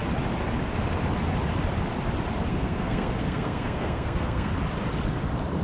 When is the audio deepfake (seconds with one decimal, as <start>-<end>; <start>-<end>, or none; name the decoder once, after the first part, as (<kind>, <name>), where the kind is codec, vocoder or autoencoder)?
2.5-4.5 (codec, SNAC)